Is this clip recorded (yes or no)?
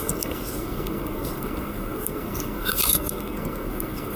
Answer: no